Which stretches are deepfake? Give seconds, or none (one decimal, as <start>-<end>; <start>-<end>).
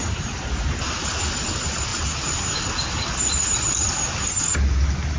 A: none